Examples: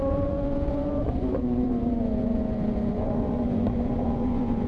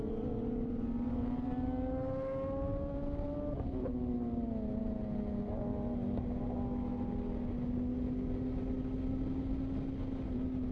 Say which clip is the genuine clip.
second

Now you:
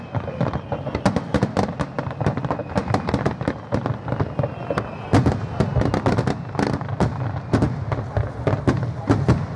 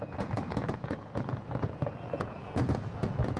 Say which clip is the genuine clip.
first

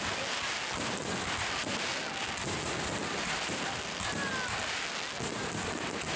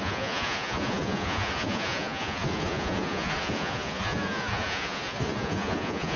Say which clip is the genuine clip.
first